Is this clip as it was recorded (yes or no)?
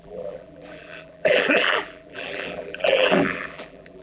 no